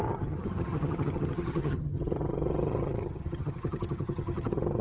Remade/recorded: remade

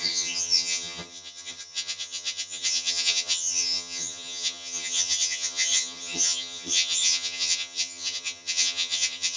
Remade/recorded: remade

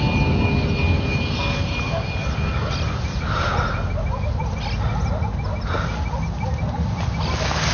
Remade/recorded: recorded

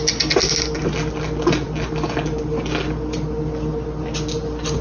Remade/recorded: recorded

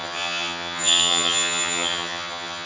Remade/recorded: remade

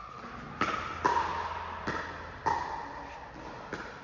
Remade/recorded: recorded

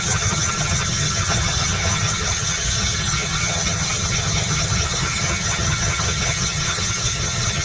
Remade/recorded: remade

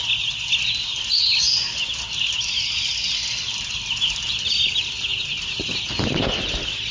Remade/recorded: recorded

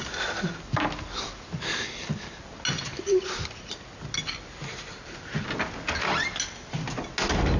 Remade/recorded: recorded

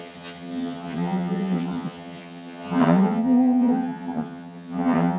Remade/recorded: remade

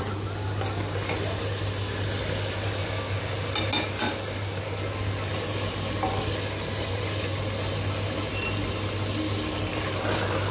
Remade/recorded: recorded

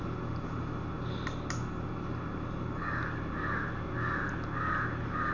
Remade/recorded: recorded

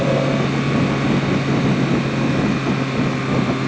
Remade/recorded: recorded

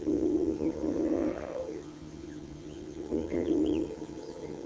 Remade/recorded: remade